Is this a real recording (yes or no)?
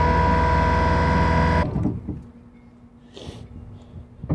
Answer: yes